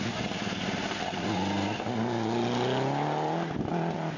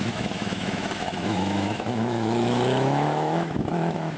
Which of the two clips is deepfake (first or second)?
second